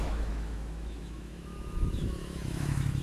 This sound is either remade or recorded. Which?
remade